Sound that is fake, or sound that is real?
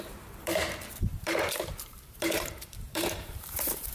fake